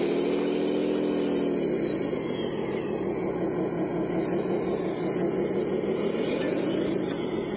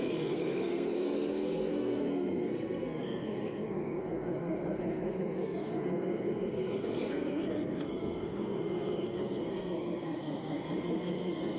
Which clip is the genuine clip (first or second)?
first